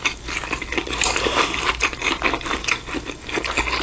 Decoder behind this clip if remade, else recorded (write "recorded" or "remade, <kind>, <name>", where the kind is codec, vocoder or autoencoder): recorded